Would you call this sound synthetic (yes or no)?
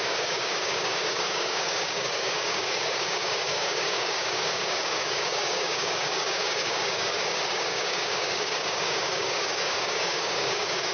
yes